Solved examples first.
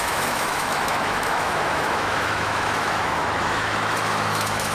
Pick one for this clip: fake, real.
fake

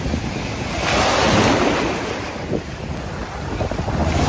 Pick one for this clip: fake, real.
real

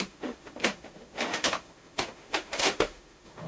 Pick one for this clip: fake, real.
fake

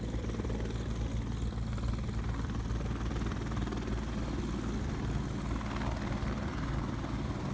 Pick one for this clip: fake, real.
real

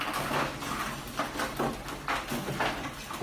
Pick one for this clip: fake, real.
real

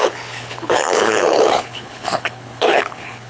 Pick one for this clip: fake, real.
fake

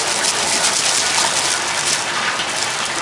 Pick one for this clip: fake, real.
real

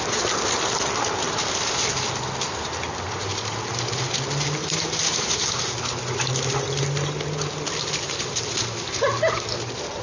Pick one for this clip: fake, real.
real